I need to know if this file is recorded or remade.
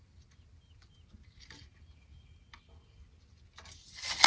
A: recorded